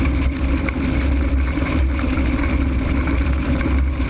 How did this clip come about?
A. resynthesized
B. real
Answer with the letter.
B